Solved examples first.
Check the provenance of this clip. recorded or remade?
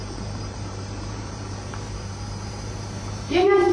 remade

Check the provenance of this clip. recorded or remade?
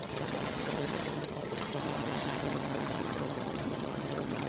remade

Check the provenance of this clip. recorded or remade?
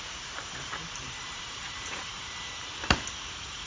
remade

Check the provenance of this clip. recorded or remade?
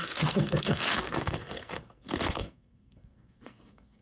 remade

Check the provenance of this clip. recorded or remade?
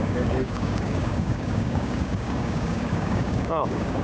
remade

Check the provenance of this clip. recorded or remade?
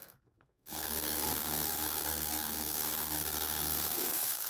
remade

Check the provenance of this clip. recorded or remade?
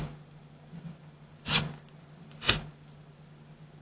recorded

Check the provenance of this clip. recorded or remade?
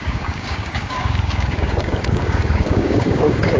remade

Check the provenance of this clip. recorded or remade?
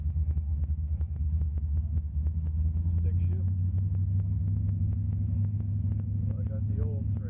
recorded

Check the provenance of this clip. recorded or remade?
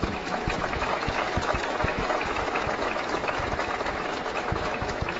remade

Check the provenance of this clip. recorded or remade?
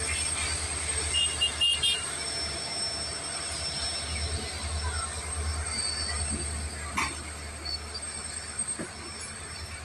recorded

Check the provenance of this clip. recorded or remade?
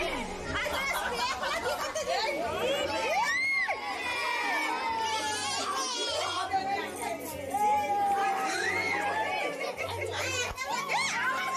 recorded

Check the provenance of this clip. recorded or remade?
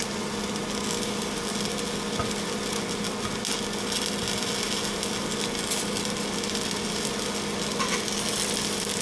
recorded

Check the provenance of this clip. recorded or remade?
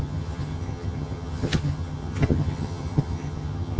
remade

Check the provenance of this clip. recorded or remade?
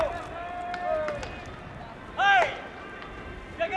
recorded